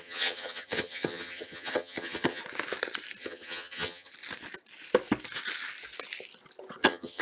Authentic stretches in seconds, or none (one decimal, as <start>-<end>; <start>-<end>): 2.4-3.2; 4.1-6.8

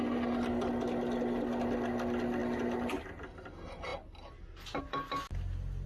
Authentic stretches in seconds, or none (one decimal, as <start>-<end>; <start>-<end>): 0.0-5.9

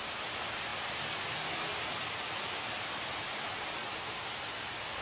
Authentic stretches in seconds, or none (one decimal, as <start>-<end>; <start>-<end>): 0.0-5.0

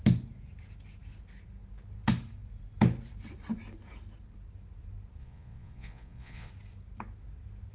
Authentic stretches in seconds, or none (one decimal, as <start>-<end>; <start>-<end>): 0.0-5.2; 6.5-7.7

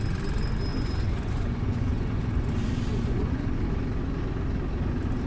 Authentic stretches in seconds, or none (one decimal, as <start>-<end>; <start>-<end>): 0.0-0.7; 2.5-2.9; 3.6-5.3

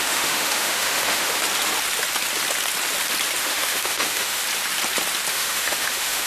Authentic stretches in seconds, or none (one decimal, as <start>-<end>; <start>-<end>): 1.4-3.4; 4.4-5.3

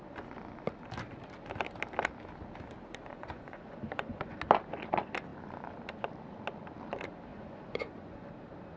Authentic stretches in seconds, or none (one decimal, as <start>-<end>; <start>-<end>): 0.0-3.1; 4.4-7.3; 8.3-8.8